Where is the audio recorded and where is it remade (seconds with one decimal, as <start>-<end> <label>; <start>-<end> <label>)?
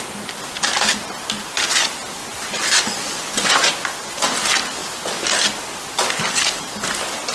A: 0.0-2.2 recorded; 2.2-3.7 remade; 3.7-7.3 recorded